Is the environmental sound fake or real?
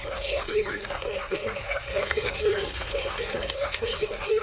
fake